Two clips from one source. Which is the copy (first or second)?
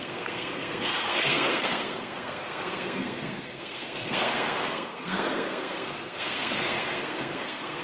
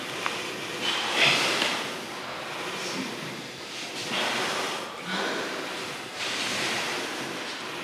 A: first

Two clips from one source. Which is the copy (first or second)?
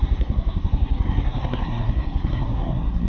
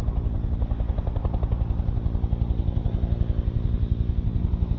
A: first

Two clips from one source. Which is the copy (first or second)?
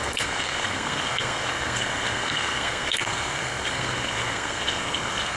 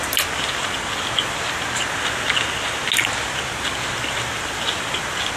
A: first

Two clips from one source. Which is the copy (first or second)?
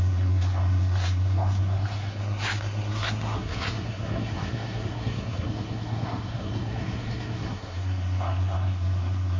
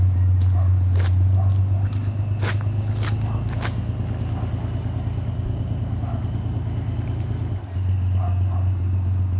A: first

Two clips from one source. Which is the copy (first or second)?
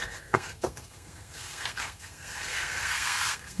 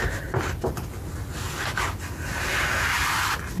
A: first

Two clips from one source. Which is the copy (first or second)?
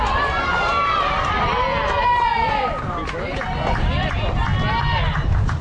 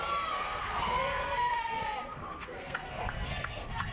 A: second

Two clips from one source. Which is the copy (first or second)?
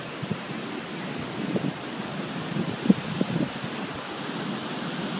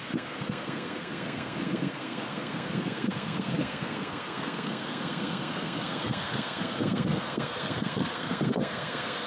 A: second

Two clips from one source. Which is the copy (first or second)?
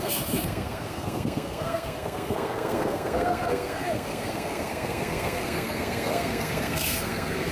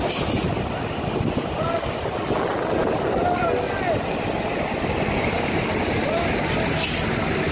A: first